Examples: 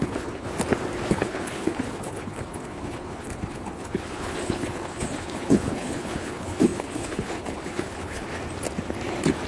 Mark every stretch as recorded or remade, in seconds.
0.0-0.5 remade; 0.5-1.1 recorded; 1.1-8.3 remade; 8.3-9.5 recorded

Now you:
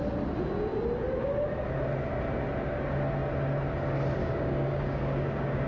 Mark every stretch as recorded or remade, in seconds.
0.0-4.2 recorded; 4.2-5.7 remade

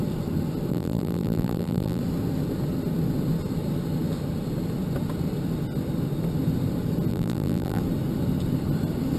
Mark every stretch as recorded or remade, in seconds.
0.0-0.7 recorded; 0.7-2.0 remade; 2.0-7.1 recorded; 7.1-7.8 remade; 7.8-9.2 recorded

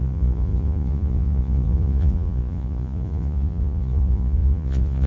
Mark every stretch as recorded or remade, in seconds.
0.0-5.1 remade